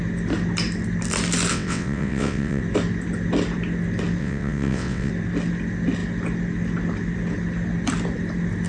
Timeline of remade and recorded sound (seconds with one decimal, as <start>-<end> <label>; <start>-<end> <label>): 0.0-1.5 recorded; 1.5-2.6 remade; 2.6-4.2 recorded; 4.2-5.1 remade; 5.1-8.7 recorded